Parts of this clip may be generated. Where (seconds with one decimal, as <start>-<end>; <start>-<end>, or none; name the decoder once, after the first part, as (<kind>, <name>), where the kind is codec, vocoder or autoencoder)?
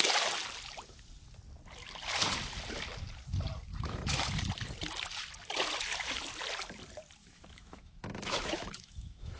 3.7-4.3 (autoencoder, DAC-VAE); 7.2-9.4